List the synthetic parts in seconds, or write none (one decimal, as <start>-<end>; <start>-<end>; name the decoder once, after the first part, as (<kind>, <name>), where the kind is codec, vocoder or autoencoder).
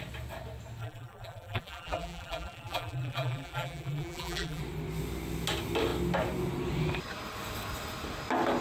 0.8-4.6 (vocoder, BigVGAN v2)